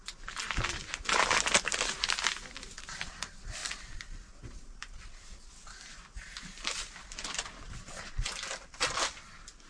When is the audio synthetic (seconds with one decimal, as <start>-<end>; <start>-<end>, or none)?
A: none